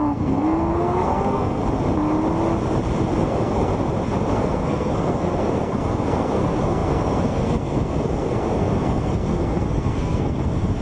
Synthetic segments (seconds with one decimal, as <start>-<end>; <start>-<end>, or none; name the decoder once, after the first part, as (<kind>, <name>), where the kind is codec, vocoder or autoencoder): 0.0-1.6 (codec, SNAC); 3.2-3.7; 4.3-10.8